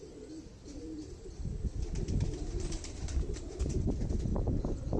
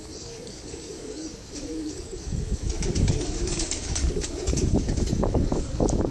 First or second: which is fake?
second